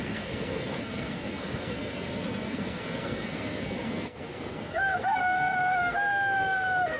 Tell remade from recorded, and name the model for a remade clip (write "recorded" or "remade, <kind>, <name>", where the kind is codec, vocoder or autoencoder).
remade, codec, SNAC